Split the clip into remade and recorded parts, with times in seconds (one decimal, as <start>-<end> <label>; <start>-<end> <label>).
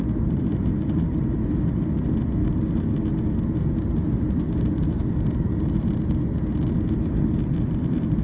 0.0-8.2 recorded